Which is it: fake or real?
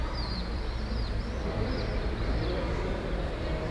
fake